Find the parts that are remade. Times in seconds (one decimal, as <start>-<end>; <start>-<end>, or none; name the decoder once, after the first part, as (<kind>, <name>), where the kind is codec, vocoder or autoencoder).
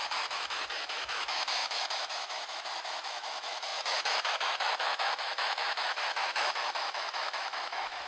0.0-8.1 (autoencoder, DAC-VAE)